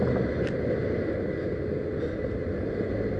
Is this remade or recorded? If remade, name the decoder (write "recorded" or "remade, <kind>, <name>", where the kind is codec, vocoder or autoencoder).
recorded